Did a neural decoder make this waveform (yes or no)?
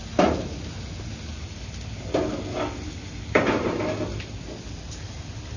no